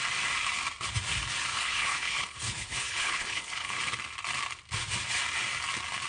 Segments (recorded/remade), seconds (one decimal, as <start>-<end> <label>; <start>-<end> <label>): 0.0-1.5 recorded; 1.5-3.8 remade; 3.8-6.1 recorded

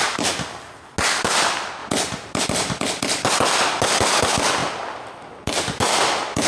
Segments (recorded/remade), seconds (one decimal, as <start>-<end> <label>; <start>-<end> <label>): 0.0-6.5 recorded

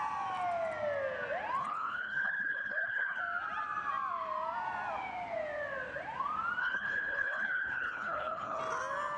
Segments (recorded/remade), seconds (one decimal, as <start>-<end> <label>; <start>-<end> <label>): 0.0-1.6 recorded; 1.6-3.2 remade; 3.2-6.6 recorded; 6.6-8.6 remade; 8.6-9.2 recorded

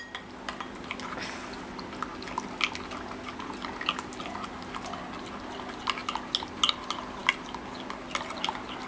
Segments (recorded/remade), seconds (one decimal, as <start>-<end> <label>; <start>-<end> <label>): 0.0-8.9 recorded

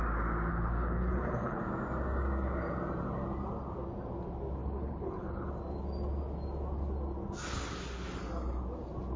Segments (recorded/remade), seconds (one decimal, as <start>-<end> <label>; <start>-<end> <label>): 0.0-0.5 recorded; 0.5-1.6 remade; 1.6-4.6 recorded; 4.6-5.5 remade; 5.5-9.2 recorded

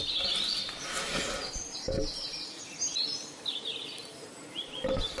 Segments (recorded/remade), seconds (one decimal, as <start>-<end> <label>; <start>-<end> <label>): 0.0-5.2 recorded